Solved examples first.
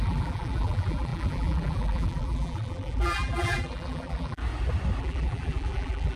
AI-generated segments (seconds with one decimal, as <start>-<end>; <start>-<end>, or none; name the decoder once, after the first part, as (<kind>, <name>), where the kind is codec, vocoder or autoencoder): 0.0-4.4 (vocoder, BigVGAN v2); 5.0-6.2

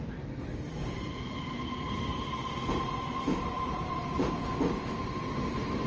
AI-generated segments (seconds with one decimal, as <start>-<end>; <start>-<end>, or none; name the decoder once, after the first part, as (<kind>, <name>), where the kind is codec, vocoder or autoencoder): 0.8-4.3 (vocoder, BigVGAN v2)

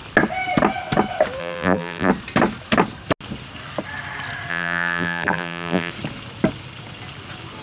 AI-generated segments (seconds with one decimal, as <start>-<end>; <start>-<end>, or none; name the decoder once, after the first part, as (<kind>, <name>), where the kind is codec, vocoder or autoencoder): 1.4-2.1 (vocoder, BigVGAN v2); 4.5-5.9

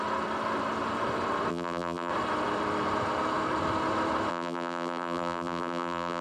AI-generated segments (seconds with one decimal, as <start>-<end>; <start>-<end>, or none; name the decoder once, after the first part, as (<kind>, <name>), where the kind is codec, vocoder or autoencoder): 1.5-2.1 (vocoder, BigVGAN v2); 4.3-6.2

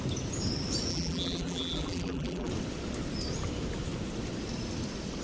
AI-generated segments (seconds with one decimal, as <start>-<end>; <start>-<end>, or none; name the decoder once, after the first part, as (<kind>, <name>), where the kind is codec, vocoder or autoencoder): 0.9-2.5 (vocoder, BigVGAN v2)

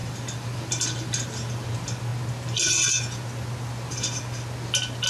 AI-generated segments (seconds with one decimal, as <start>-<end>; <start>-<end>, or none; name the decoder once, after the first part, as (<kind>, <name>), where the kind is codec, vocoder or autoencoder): 0.0-1.7 (vocoder, BigVGAN v2)

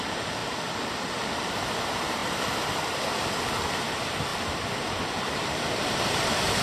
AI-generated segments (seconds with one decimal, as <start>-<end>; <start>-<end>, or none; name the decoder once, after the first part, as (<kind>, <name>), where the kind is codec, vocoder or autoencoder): 0.4-1.3 (vocoder, BigVGAN v2); 4.3-6.6

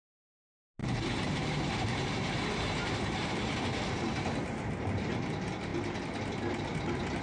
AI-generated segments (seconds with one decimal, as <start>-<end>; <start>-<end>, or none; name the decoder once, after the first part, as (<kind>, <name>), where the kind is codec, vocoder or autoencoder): 0.8-5.1 (vocoder, BigVGAN v2)